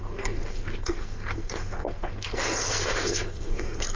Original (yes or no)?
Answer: no